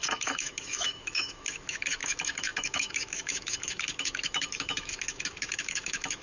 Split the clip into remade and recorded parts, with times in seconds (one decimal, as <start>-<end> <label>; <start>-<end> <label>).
0.0-6.2 remade